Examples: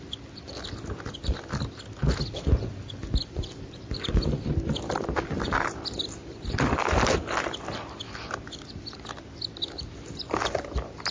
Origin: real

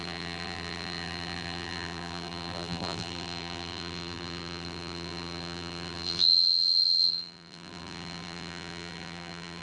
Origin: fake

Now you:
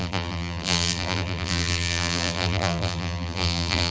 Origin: fake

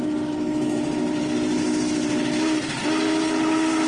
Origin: real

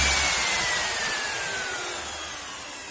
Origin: real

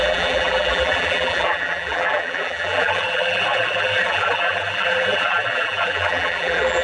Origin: fake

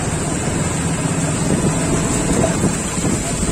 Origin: real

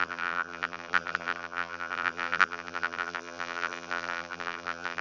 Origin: fake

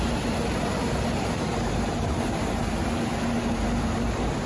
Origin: fake